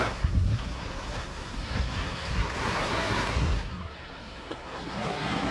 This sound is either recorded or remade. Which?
remade